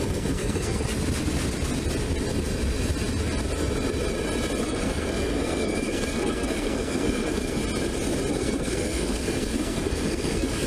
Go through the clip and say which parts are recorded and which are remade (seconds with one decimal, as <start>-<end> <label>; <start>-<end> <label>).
0.0-0.9 remade; 0.9-4.6 recorded; 4.6-7.6 remade; 7.6-8.3 recorded; 8.3-10.7 remade